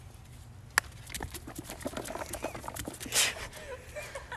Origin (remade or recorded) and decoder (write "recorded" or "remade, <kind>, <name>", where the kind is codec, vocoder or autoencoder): recorded